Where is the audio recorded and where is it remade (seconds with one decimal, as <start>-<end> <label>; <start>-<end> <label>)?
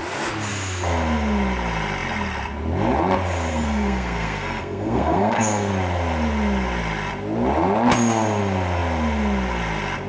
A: 0.0-3.5 recorded; 3.5-5.7 remade; 5.7-10.1 recorded